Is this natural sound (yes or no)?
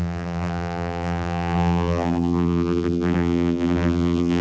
no